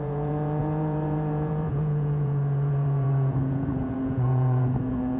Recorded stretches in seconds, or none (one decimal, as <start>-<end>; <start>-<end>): none